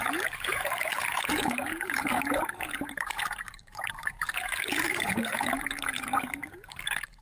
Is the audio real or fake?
fake